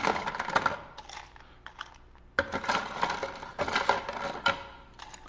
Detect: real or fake real